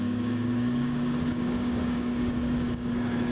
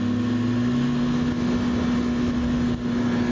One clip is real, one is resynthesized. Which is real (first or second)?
second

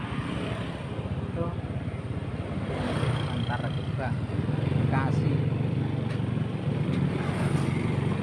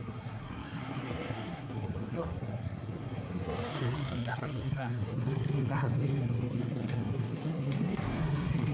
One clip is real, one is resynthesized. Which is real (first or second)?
first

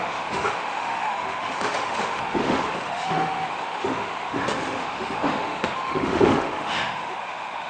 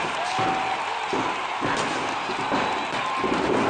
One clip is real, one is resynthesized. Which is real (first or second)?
second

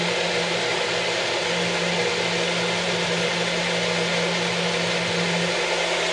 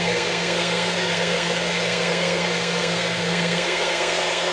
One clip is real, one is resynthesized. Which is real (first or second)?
first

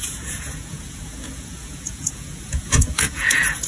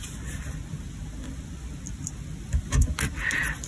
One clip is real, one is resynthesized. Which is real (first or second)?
second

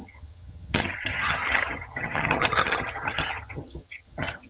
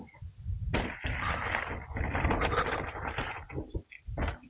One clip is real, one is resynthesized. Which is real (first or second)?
second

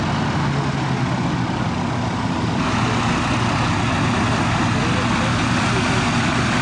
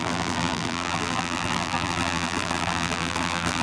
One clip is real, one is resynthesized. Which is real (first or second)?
first